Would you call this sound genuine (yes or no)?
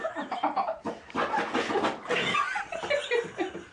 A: yes